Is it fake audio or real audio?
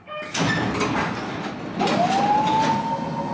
real